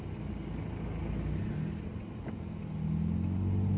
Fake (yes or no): no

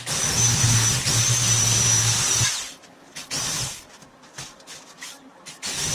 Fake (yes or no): no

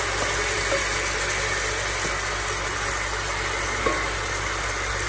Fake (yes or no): no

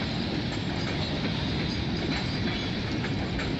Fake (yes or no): no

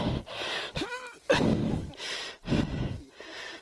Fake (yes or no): no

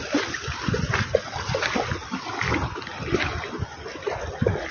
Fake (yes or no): no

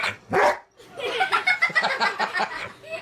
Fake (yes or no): no